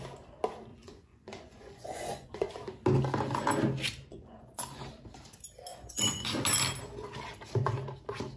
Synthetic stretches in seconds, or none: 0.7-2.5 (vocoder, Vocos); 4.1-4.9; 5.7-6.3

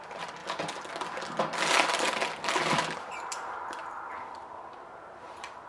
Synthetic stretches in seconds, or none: 0.0-0.4 (vocoder, BigVGAN v2); 3.0-3.8; 4.3-5.7

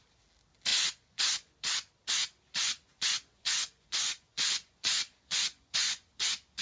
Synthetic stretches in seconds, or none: 0.7-1.6 (vocoder, Vocos); 2.2-6.6

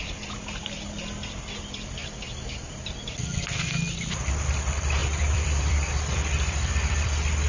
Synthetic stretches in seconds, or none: 5.0-7.5 (vocoder, BigVGAN v2)

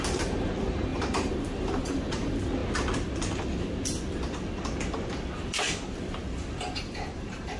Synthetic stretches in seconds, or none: 0.0-2.6 (vocoder, BigVGAN v2); 6.7-7.6

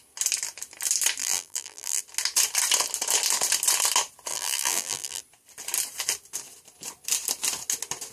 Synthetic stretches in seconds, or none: 1.2-2.0 (vocoder, BigVGAN v2); 4.3-5.2